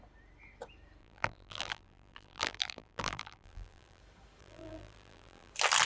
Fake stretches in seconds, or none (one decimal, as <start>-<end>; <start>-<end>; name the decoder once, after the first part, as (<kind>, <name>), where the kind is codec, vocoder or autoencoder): 1.0-4.0 (vocoder, BigVGAN v2); 4.4-5.5